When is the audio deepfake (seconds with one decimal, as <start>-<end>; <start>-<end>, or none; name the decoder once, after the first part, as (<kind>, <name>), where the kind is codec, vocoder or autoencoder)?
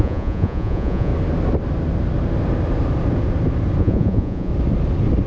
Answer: 0.0-1.1 (vocoder, Vocos); 3.8-4.5